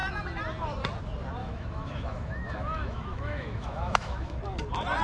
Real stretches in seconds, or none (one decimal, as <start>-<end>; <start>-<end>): 0.0-1.4; 4.4-5.0